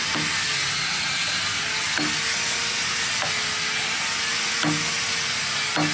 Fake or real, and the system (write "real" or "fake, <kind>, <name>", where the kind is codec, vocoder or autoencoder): real